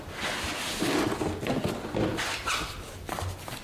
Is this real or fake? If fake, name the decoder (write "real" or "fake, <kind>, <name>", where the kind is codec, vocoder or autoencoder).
real